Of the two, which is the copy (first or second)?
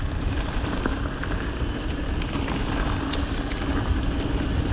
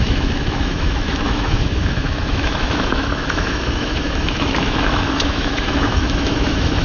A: second